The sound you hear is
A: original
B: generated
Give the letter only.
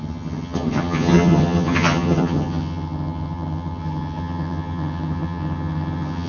B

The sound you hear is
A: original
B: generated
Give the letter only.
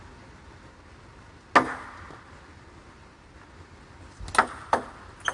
A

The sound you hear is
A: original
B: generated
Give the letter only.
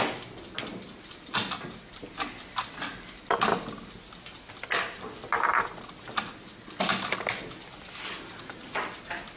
A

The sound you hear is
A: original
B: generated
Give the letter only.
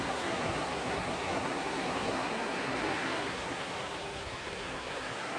B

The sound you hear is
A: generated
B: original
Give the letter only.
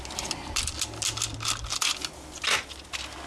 B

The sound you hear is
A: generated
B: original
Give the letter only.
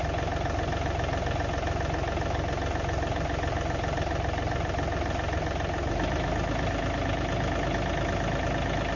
B